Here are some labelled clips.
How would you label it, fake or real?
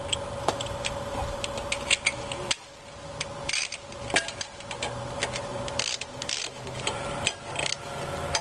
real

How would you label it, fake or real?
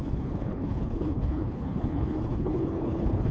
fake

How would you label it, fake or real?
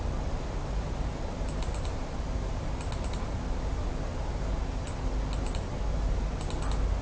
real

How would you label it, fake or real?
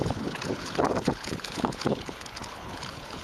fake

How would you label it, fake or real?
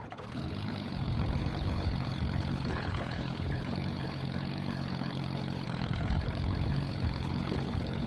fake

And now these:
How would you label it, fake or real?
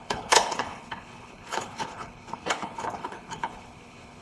fake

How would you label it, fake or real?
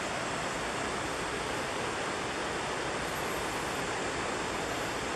real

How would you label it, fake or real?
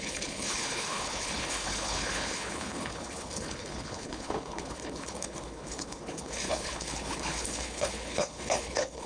fake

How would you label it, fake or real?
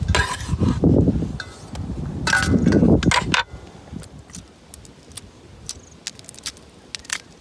real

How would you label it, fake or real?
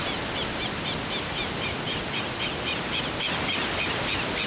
real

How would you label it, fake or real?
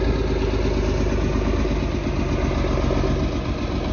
real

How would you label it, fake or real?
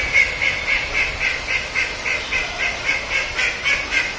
real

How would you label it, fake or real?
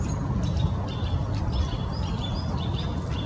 real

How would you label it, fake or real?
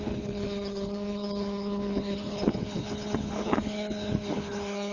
fake